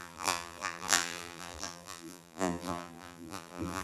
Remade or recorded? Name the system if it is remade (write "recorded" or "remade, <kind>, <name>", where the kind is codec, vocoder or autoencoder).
remade, vocoder, BigVGAN v2